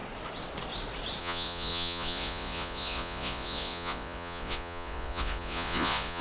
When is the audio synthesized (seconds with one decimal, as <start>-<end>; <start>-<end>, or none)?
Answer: 1.2-6.2